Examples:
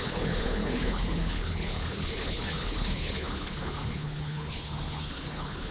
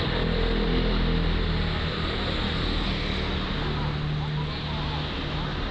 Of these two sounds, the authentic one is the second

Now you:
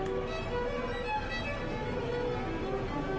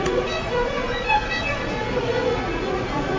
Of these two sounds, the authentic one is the first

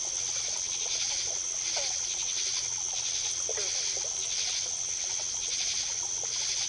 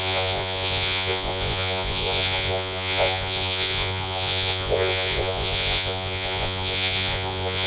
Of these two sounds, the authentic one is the first